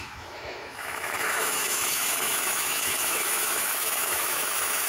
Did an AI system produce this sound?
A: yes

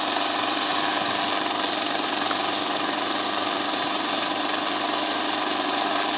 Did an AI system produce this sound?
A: no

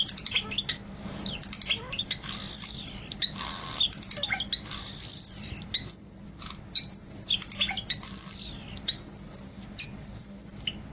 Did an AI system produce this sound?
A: no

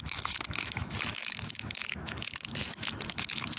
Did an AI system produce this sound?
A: yes